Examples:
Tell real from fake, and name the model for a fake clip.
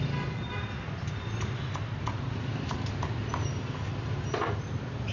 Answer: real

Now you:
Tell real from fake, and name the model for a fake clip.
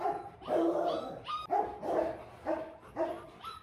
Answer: real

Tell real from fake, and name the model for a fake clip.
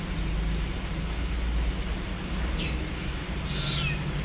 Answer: real